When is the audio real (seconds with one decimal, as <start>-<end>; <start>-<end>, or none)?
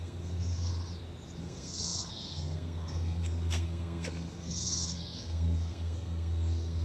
0.7-1.4